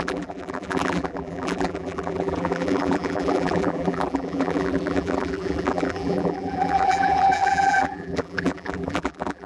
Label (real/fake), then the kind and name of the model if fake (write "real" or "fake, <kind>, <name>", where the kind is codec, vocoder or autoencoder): fake, vocoder, BigVGAN v2